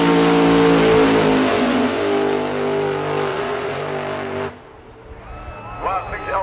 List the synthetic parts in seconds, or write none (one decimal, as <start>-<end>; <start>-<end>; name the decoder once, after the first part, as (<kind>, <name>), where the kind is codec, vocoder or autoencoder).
1.5-2.0 (vocoder, Vocos); 3.3-3.8